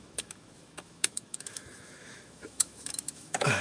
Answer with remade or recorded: remade